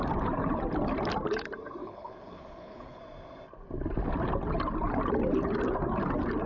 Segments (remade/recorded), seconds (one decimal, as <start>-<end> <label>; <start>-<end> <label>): 0.0-1.8 recorded; 1.8-3.0 remade; 3.0-6.5 recorded